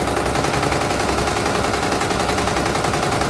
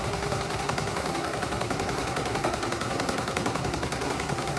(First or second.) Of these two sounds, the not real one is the second